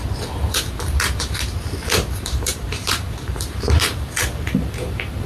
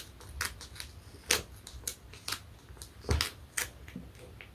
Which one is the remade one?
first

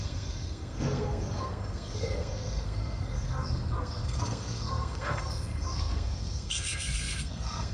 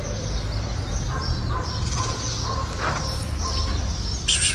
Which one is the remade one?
first